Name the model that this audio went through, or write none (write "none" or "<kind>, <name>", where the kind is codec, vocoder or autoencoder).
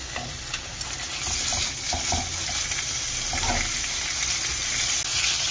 none